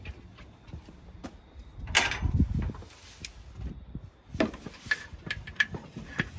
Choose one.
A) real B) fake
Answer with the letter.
A